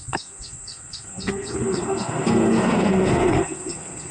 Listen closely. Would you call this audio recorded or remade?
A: remade